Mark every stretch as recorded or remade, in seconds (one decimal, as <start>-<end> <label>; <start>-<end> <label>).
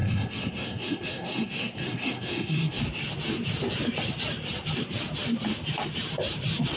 0.0-2.8 remade; 2.8-6.8 recorded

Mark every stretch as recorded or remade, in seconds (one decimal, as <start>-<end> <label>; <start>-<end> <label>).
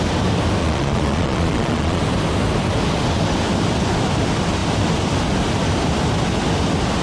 0.0-0.6 recorded; 0.6-2.0 remade; 2.0-7.0 recorded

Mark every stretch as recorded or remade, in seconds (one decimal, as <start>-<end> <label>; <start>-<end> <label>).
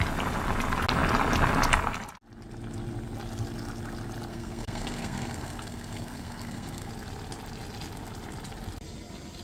0.0-4.3 recorded; 4.3-6.9 remade; 6.9-9.4 recorded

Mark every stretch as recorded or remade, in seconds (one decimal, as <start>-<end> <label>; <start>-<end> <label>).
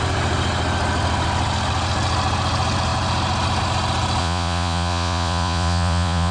0.0-4.2 recorded; 4.2-6.3 remade